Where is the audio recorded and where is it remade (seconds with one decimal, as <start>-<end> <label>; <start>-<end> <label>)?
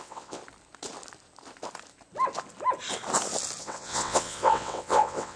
0.0-0.4 remade; 0.4-3.6 recorded; 3.6-5.4 remade